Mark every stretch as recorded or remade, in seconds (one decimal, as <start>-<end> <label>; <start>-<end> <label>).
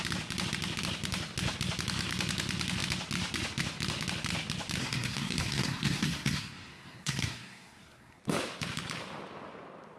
0.0-4.8 recorded; 4.8-8.2 remade; 8.2-10.0 recorded